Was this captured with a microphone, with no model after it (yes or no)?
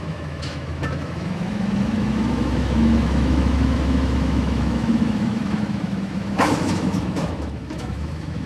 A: no